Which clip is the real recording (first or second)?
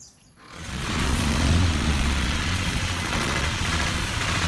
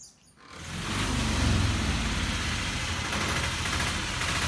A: second